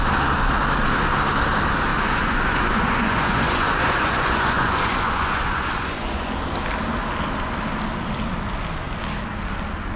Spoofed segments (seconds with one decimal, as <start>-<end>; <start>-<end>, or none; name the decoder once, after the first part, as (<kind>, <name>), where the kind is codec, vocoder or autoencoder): 1.9-6.3 (vocoder, Vocos)